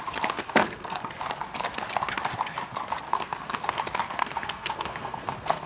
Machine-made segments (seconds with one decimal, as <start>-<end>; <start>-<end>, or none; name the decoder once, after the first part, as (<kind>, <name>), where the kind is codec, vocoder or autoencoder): 0.4-1.1 (codec, SNAC); 3.1-3.8; 4.2-5.7